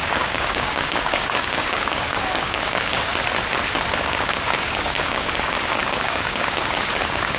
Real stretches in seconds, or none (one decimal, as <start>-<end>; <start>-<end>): 3.1-4.0